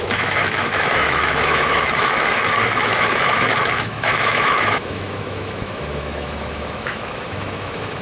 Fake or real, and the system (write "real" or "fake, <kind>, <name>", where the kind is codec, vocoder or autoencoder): fake, autoencoder, DAC-VAE